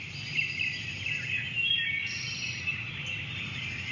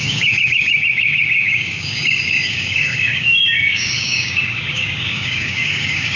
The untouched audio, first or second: first